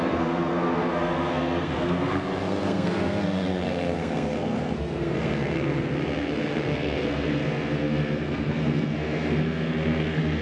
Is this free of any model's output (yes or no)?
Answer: no